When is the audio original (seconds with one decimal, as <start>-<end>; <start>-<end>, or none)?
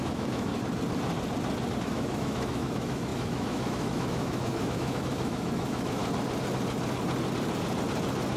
0.5-1.8; 6.0-8.4